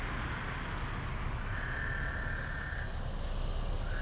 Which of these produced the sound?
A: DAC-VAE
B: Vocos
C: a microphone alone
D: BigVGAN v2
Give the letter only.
C